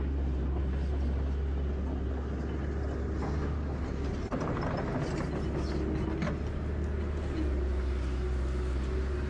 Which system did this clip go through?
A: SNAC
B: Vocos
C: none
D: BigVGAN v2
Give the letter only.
C